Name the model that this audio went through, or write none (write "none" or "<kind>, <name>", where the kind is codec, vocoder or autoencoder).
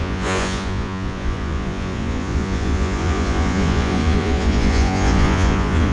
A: vocoder, Vocos